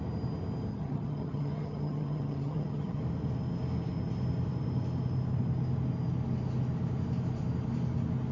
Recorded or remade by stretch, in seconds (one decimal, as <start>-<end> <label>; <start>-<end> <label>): 0.0-0.7 recorded; 0.7-3.0 remade; 3.0-8.3 recorded

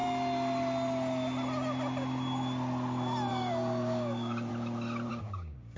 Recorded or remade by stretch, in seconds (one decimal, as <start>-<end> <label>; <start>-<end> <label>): 0.0-3.3 recorded; 3.3-4.5 remade; 4.5-5.1 recorded; 5.1-5.8 remade

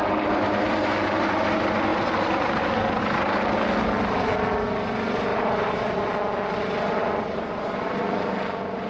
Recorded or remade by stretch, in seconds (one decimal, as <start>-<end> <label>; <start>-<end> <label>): 0.0-5.3 recorded; 5.3-6.1 remade; 6.1-7.0 recorded; 7.0-8.0 remade; 8.0-8.9 recorded

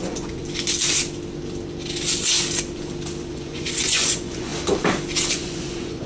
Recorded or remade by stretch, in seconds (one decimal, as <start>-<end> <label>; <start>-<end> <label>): 0.0-0.4 remade; 0.4-3.3 recorded; 3.3-4.5 remade; 4.5-5.3 recorded; 5.3-6.1 remade

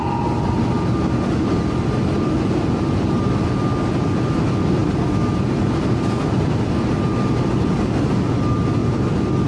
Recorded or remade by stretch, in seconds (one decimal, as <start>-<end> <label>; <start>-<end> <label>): 0.0-8.8 recorded; 8.8-9.5 remade

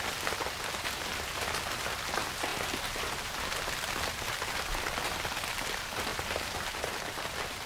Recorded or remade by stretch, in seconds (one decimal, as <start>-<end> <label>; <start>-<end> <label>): 0.0-2.5 recorded; 2.5-3.5 remade; 3.5-6.1 recorded; 6.1-7.0 remade; 7.0-7.7 recorded

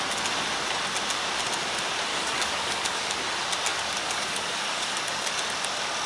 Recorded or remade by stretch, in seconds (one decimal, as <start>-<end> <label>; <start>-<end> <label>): 0.0-2.1 recorded; 2.1-3.2 remade; 3.2-3.7 recorded; 3.7-5.3 remade; 5.3-6.1 recorded

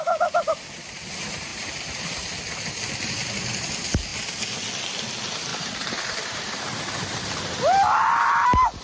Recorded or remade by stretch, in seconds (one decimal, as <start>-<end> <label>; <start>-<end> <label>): 0.0-1.5 recorded; 1.5-2.0 remade; 2.0-5.5 recorded; 5.5-7.2 remade; 7.2-8.8 recorded